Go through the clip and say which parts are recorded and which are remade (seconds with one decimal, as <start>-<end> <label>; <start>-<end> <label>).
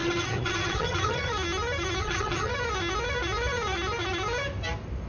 0.0-1.3 remade; 1.3-2.0 recorded; 2.0-2.5 remade; 2.5-5.1 recorded